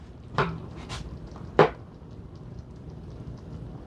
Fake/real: fake